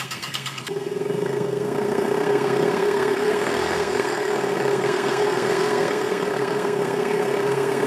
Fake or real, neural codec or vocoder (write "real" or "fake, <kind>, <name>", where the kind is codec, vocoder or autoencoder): fake, codec, SNAC